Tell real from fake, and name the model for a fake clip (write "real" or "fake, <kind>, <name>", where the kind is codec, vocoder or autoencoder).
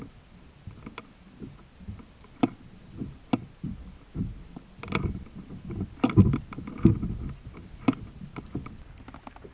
real